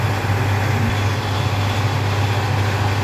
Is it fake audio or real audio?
real